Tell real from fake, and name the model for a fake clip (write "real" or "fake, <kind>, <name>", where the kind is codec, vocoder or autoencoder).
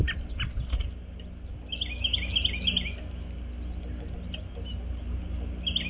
real